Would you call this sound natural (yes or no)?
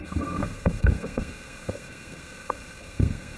no